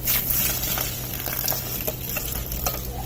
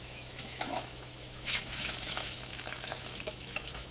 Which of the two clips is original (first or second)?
first